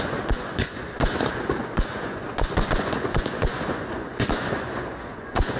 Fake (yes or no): yes